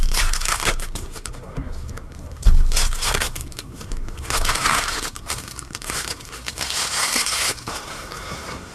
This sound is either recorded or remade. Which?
remade